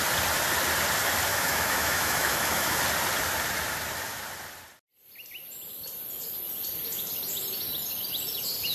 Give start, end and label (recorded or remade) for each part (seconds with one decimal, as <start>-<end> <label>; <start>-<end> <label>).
0.0-1.3 recorded; 1.3-2.8 remade; 2.8-8.7 recorded